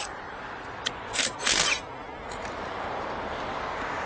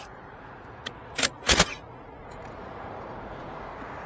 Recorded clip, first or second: first